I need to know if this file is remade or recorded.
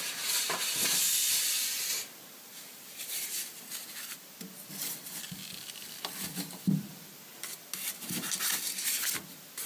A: recorded